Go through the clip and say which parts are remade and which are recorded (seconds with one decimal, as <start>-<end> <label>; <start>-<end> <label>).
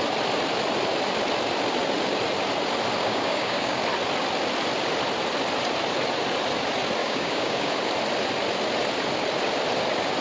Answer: 0.0-3.0 recorded; 3.0-3.8 remade; 3.8-7.0 recorded; 7.0-7.7 remade; 7.7-10.2 recorded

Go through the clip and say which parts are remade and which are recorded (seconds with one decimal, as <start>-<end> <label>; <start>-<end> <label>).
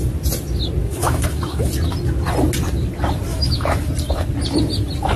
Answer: 0.0-0.8 recorded; 0.8-1.7 remade; 1.7-3.3 recorded; 3.3-3.9 remade; 3.9-5.2 recorded